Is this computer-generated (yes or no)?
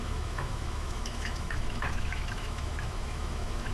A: yes